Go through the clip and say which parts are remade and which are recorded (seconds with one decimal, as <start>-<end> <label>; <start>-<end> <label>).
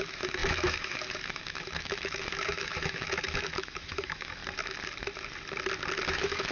0.0-4.4 remade; 4.4-6.1 recorded; 6.1-6.5 remade